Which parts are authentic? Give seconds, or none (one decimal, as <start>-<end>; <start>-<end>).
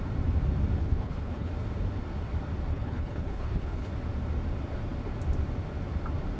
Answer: 0.0-0.8; 1.5-2.7; 3.9-6.4